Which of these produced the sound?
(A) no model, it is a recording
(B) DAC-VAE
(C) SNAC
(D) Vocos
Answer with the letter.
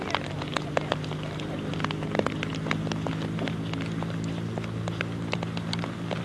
A